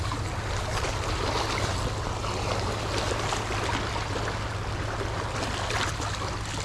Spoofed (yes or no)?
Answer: no